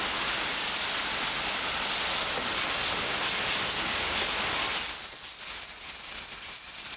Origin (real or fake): real